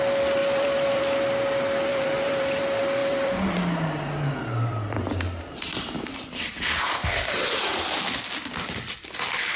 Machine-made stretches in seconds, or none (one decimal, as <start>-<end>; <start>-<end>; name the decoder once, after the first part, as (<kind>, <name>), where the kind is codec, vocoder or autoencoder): 0.4-1.0 (vocoder, BigVGAN v2); 1.9-2.6; 3.0-8.0